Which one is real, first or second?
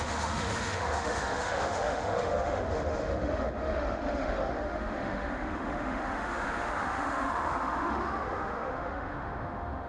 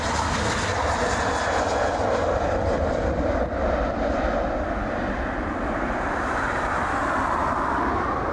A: second